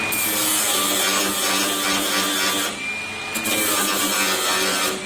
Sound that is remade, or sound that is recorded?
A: recorded